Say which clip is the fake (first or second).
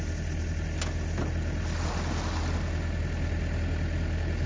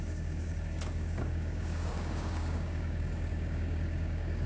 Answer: second